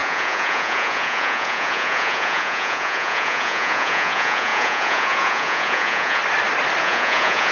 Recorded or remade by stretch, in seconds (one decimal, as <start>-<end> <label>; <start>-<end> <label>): 0.0-6.2 remade; 6.2-6.8 recorded; 6.8-7.5 remade